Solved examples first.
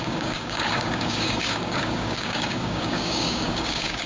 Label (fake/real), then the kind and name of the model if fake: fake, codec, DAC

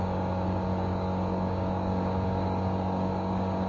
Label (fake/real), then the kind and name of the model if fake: fake, codec, DAC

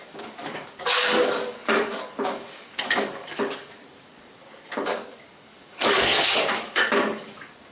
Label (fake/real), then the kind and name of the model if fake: fake, codec, DAC